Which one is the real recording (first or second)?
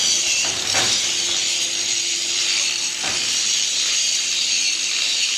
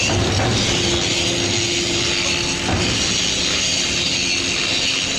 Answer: second